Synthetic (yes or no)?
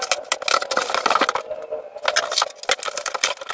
no